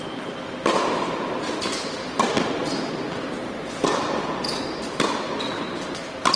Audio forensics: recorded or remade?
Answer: remade